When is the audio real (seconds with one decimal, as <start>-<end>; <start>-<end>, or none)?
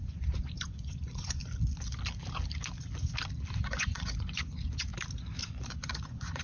1.4-3.6; 4.9-5.4